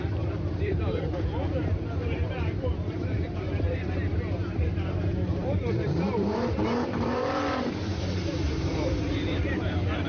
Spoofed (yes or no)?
yes